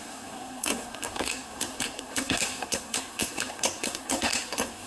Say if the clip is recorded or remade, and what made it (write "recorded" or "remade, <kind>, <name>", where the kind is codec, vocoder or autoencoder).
remade, codec, SNAC